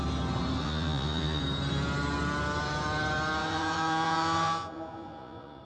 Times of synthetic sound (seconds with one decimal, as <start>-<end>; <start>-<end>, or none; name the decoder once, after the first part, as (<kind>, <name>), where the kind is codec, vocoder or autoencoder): 0.6-1.4 (vocoder, Vocos); 3.4-5.6